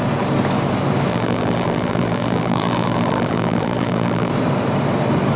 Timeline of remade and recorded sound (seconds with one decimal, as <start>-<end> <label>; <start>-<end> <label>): 0.0-1.1 recorded; 1.1-4.3 remade; 4.3-5.4 recorded